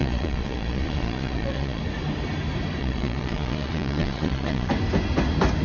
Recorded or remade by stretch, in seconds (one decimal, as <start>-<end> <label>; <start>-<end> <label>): 0.0-1.8 remade; 1.8-2.8 recorded; 2.8-4.7 remade; 4.7-5.6 recorded